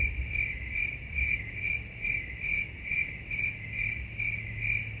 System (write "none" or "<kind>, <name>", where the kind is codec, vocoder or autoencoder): none